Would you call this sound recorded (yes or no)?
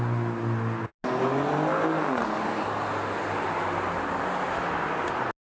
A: yes